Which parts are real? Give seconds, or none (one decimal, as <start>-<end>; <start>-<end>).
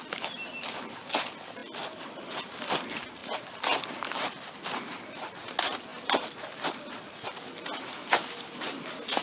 0.0-1.6; 2.5-3.2; 3.8-5.9; 8.3-9.2